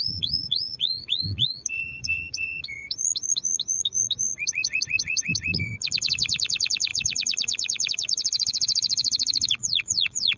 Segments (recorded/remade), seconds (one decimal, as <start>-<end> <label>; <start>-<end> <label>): 0.0-10.4 remade